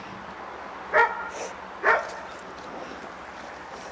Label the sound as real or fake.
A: real